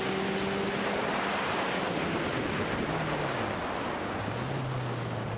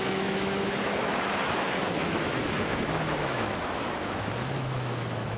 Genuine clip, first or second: first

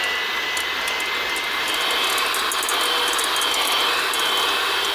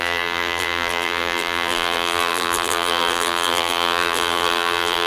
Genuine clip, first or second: first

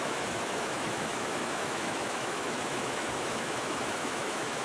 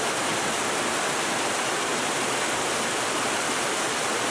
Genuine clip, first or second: second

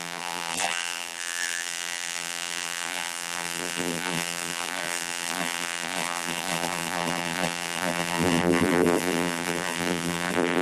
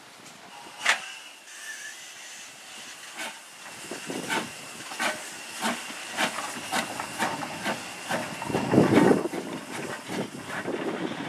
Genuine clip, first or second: second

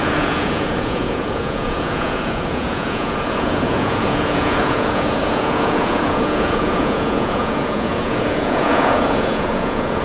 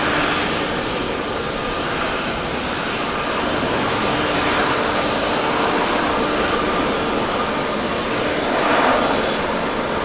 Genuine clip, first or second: second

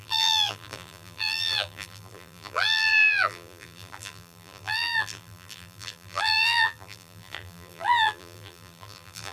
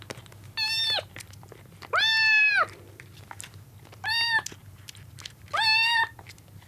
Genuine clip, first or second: second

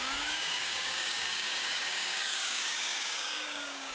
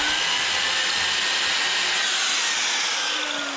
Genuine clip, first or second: second